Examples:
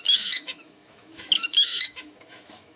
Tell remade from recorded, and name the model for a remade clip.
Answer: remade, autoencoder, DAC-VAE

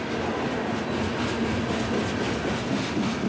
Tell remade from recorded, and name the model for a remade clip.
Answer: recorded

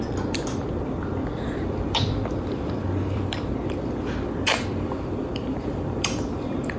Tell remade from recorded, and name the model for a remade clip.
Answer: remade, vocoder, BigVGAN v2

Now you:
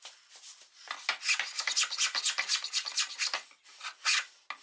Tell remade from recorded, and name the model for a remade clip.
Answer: recorded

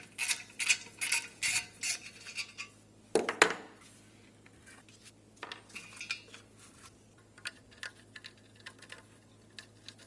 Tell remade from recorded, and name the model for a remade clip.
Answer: recorded